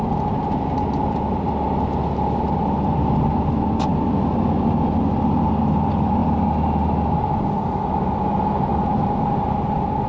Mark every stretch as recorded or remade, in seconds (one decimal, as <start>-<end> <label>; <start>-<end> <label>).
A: 0.0-10.1 recorded